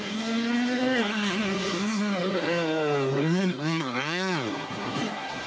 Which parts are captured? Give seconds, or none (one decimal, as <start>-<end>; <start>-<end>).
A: none